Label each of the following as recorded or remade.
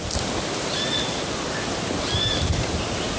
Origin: recorded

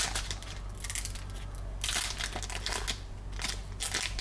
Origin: recorded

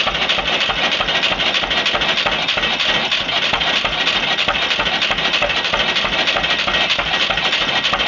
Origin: recorded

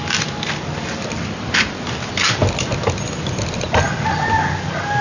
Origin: recorded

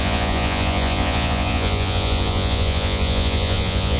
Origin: remade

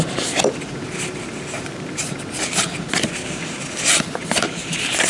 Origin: recorded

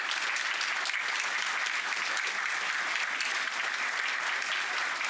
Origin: recorded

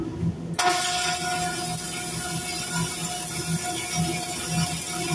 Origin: recorded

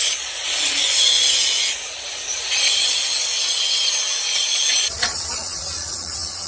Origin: remade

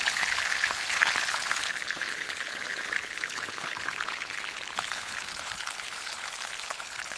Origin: remade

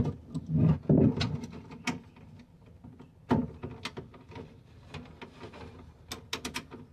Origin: recorded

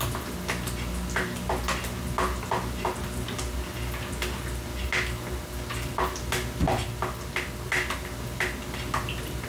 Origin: recorded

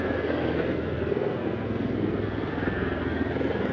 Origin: remade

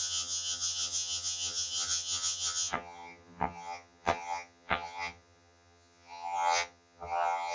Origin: remade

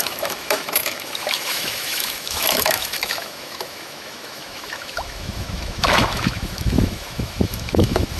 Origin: remade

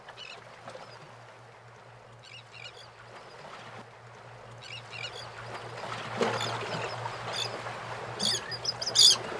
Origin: recorded